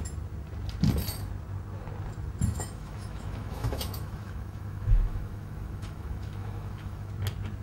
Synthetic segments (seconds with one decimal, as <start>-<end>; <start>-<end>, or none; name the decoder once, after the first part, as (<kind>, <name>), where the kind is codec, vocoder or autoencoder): 2.5-7.1 (autoencoder, DAC-VAE)